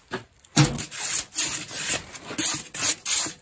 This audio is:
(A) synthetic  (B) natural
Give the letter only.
B